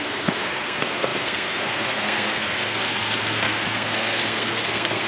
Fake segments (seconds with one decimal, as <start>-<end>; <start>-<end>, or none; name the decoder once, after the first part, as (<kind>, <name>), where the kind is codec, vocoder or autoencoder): 0.0-5.1 (codec, SNAC)

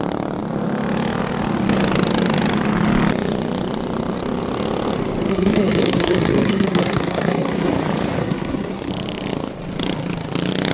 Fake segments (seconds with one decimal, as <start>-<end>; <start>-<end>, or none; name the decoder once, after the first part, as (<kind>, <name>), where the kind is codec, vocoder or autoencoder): 5.3-7.7 (codec, SNAC); 8.2-8.9

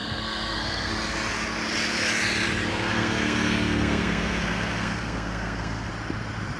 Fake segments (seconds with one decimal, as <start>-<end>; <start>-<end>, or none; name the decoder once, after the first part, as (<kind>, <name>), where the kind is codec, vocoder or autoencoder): 0.0-0.9 (codec, SNAC); 2.7-5.9